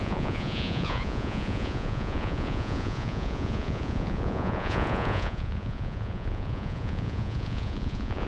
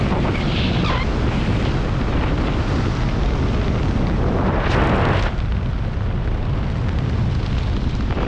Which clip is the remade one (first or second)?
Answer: first